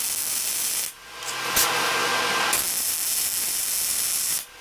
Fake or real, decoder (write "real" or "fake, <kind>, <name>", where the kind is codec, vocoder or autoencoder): real